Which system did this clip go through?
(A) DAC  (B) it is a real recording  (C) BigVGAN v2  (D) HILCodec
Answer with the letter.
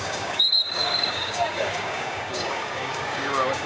A